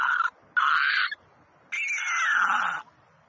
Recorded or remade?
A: recorded